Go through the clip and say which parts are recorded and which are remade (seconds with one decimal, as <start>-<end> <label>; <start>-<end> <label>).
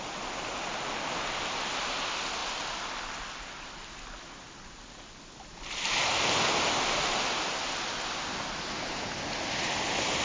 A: 0.0-10.2 recorded